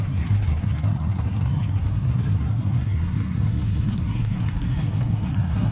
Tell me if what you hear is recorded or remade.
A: remade